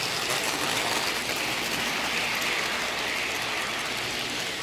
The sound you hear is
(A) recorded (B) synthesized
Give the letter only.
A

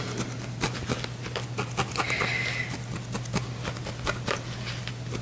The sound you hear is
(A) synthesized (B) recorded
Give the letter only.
B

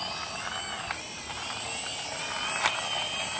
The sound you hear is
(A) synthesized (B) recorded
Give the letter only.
B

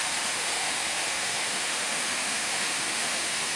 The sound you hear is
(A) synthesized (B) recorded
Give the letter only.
A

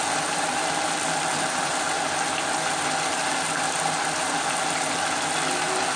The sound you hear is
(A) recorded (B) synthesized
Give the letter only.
A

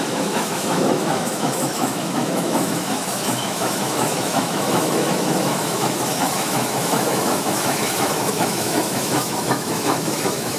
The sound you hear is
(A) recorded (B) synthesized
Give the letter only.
B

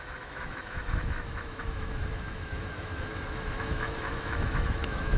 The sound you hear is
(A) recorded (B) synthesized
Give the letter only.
B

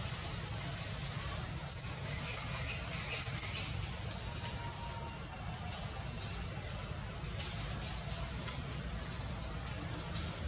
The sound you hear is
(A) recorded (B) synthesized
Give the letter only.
A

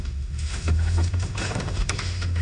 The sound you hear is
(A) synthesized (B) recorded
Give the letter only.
A